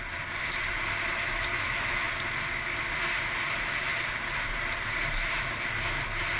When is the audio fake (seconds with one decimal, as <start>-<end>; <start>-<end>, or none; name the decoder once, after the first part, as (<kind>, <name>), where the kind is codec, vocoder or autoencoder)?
1.5-2.0 (autoencoder, DAC-VAE)